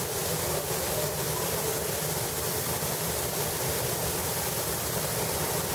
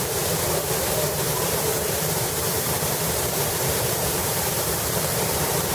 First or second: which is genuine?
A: first